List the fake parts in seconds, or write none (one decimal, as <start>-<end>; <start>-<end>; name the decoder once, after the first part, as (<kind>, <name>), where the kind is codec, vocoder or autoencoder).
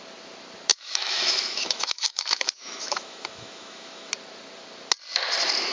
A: 0.7-4.1 (autoencoder, DAC-VAE)